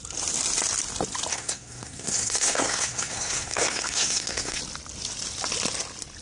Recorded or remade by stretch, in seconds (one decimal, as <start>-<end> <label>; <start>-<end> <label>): 0.0-1.3 recorded; 1.3-4.6 remade; 4.6-6.2 recorded